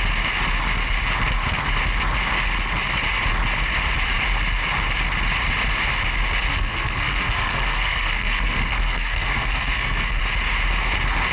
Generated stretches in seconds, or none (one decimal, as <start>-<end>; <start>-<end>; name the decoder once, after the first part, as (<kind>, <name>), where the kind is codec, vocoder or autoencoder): 6.5-10.2 (codec, SNAC)